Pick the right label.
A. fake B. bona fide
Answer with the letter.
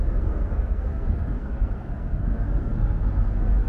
A